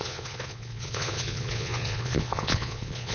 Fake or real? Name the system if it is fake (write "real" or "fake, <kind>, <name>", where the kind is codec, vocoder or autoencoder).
fake, vocoder, Vocos